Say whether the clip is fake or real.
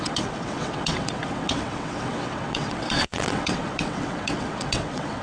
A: fake